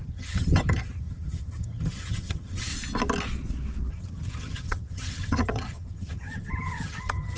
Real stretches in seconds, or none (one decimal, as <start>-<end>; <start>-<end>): 2.7-3.9